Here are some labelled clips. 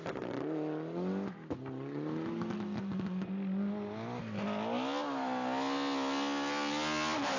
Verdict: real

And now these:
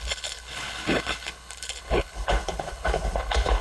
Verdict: fake